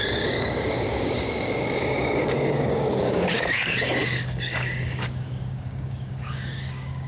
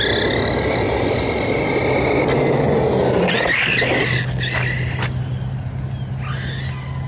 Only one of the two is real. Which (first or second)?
second